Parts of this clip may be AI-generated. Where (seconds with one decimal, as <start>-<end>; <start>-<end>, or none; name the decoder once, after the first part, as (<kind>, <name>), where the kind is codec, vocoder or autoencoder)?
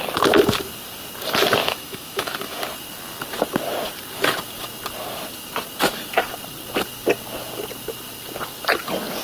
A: 1.6-2.6 (autoencoder, DAC-VAE)